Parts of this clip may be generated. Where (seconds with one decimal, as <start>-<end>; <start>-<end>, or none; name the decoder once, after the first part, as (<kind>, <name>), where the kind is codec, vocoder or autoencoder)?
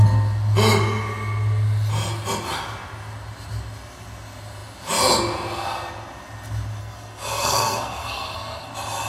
6.8-8.7 (codec, SNAC)